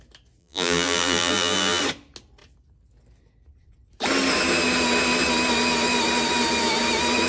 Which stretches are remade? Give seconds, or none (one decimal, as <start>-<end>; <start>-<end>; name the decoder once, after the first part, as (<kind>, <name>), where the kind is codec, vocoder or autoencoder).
0.4-1.8 (vocoder, BigVGAN v2)